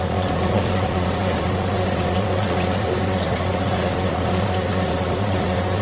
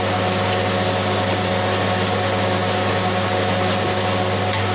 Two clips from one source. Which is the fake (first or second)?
first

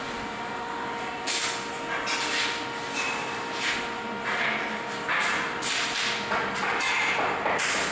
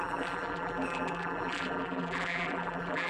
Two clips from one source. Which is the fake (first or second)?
second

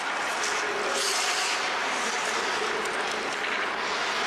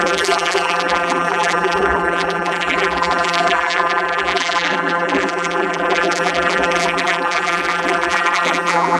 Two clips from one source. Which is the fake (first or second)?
second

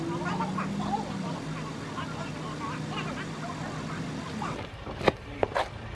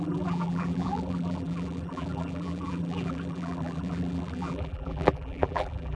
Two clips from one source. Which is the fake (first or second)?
second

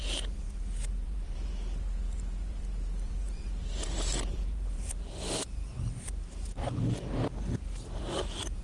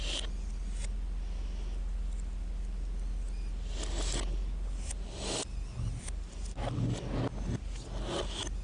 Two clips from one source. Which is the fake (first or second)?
first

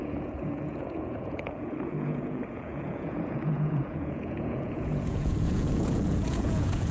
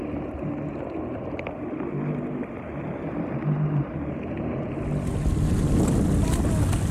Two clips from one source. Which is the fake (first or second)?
first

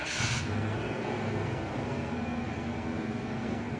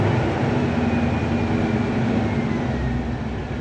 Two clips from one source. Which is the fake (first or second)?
first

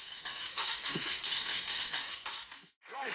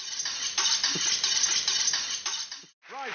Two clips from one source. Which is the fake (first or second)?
first